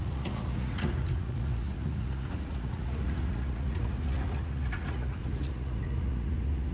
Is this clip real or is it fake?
fake